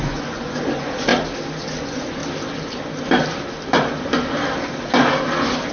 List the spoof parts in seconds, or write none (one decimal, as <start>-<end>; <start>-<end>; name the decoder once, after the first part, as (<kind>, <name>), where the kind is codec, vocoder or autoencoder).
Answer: 0.0-1.1 (vocoder, Vocos); 1.8-2.2